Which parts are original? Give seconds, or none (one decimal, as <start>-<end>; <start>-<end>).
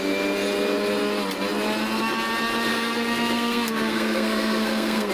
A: 0.0-2.7